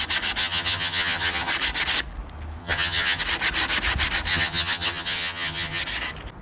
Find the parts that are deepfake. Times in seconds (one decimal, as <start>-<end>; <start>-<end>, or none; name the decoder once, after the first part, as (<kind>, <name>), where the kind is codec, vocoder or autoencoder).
0.4-1.5 (vocoder, HiFi-GAN); 2.6-3.2; 4.3-5.8

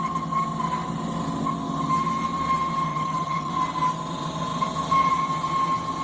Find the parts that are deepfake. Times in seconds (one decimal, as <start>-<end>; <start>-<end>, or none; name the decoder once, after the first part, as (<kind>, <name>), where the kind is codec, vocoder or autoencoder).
2.9-3.5 (vocoder, HiFi-GAN)

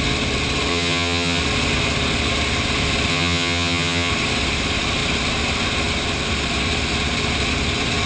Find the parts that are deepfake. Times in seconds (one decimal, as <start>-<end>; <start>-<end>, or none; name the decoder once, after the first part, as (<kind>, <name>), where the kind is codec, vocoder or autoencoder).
0.7-1.4 (vocoder, HiFi-GAN); 3.1-4.1